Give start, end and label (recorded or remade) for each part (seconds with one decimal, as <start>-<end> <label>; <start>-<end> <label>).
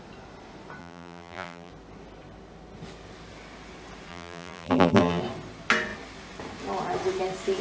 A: 0.0-0.8 recorded; 0.8-1.7 remade; 1.7-4.1 recorded; 4.1-5.2 remade; 5.2-7.6 recorded